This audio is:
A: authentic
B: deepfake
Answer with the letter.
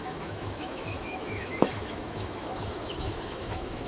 B